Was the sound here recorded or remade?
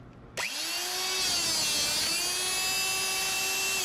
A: recorded